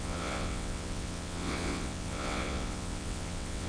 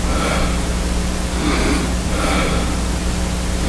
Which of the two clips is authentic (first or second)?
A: second